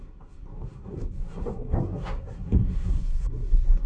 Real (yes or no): no